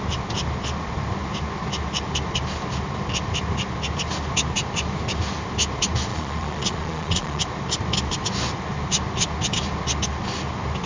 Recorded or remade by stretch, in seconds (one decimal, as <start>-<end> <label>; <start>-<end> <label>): 0.0-6.1 recorded; 6.1-7.4 remade; 7.4-10.9 recorded